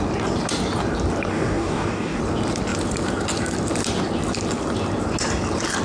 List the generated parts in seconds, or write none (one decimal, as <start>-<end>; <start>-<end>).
1.3-2.2